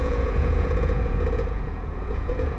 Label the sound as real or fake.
fake